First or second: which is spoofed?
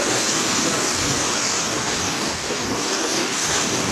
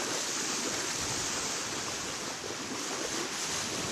first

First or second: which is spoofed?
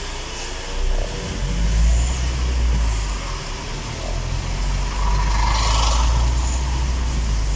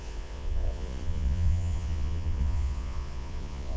second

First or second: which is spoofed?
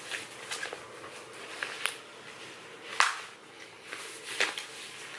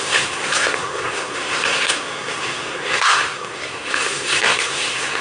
second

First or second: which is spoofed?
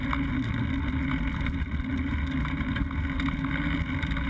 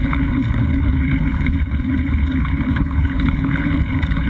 second